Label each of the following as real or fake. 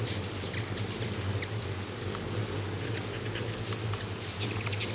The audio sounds real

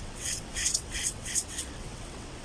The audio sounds fake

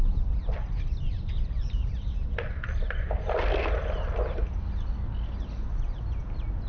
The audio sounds real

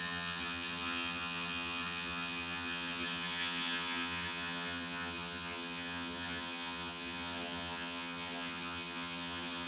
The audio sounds fake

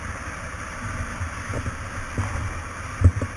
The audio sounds fake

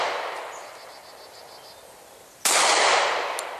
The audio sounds real